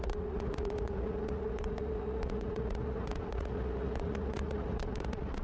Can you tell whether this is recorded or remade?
remade